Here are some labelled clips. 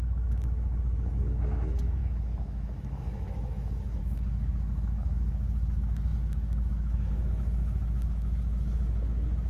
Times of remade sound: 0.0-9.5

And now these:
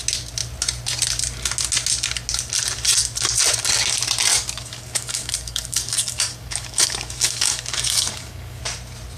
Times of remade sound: 4.3-8.6

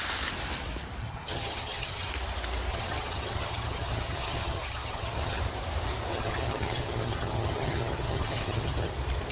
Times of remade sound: 1.0-2.1; 2.7-5.4; 6.1-8.9

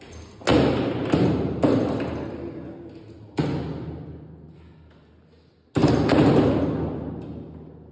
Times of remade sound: 5.8-6.3

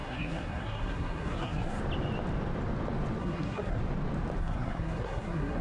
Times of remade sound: 0.0-1.8; 3.2-3.8; 4.4-5.6

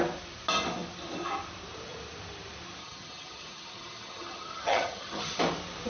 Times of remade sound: 2.8-5.4